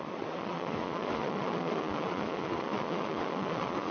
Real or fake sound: fake